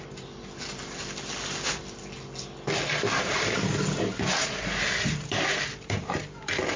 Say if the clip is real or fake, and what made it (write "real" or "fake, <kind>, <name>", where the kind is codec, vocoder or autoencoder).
real